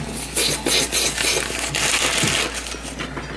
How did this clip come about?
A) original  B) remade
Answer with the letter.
A